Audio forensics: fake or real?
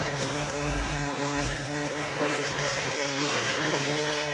fake